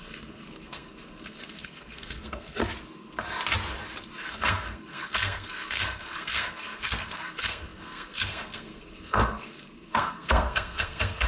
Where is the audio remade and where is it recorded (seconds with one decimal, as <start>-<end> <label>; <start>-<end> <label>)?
0.0-2.6 remade; 2.6-4.2 recorded; 4.2-11.3 remade